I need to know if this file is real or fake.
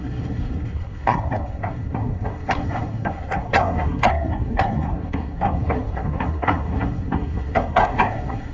fake